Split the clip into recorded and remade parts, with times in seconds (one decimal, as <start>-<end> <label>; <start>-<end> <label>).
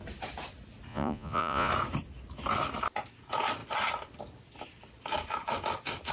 0.0-0.9 recorded; 0.9-1.7 remade; 1.7-6.1 recorded